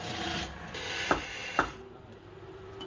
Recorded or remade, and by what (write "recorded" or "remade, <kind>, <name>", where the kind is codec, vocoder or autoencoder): remade, vocoder, BigVGAN v2